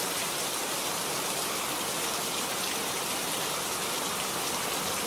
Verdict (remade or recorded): remade